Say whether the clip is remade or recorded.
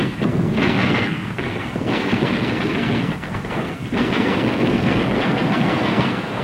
remade